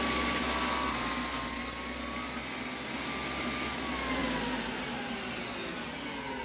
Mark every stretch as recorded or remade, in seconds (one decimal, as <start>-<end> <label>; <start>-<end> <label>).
0.0-6.4 recorded